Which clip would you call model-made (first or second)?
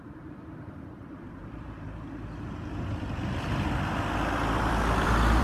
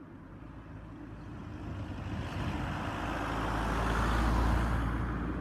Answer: first